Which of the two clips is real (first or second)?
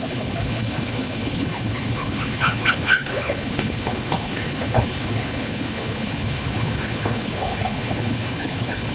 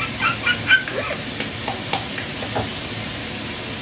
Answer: second